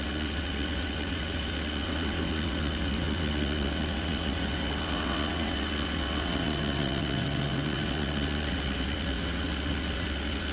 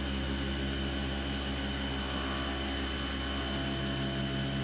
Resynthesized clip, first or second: first